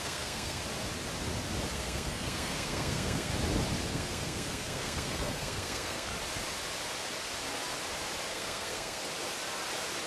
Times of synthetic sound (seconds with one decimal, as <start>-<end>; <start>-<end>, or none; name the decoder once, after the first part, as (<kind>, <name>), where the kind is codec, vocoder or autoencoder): 0.0-0.6 (codec, SNAC); 1.7-3.3; 3.9-6.1; 8.3-9.0